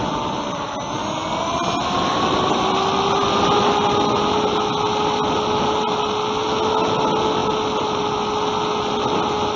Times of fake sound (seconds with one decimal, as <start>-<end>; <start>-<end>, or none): none